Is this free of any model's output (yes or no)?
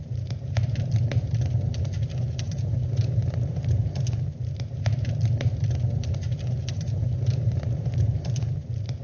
no